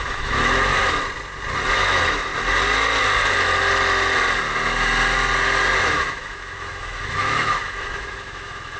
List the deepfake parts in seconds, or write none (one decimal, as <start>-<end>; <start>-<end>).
0.0-0.7; 1.7-2.3; 5.8-8.8